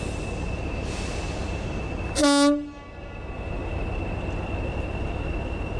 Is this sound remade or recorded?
recorded